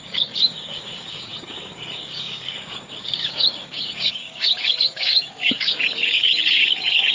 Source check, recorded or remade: remade